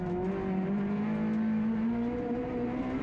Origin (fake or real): real